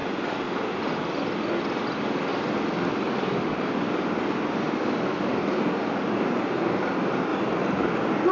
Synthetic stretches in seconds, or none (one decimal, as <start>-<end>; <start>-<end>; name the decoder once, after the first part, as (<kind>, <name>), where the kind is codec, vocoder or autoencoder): none